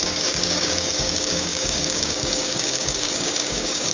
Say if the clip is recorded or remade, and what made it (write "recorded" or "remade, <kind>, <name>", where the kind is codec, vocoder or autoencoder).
remade, codec, DAC